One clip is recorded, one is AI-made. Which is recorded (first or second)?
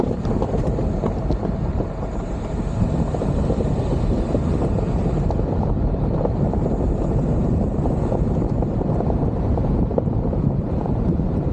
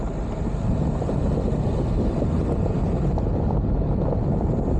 second